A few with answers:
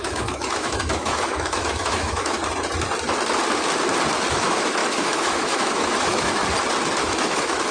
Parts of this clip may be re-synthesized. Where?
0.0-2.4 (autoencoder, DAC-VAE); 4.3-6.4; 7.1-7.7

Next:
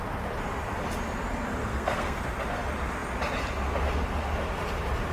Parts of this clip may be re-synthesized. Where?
1.6-2.2 (codec, SNAC)

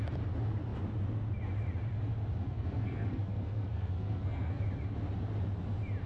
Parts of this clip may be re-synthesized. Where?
2.4-4.6 (codec, SNAC)

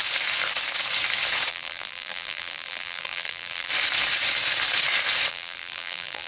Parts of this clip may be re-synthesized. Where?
1.5-3.7 (vocoder, BigVGAN v2); 5.3-6.3

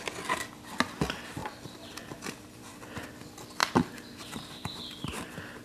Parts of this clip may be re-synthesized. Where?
1.4-2.8 (vocoder, BigVGAN v2); 3.6-5.6

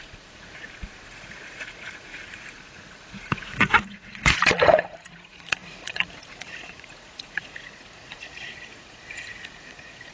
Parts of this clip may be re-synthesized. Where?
0.0-10.1 (vocoder, Vocos)